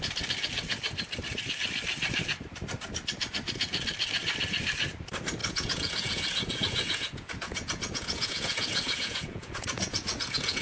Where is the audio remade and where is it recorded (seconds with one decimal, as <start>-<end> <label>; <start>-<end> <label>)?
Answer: 0.0-5.4 recorded; 5.4-10.6 remade